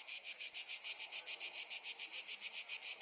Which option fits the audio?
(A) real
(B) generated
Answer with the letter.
A